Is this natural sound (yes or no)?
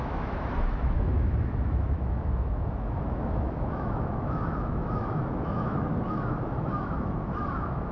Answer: no